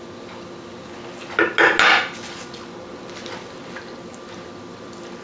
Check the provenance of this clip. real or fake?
real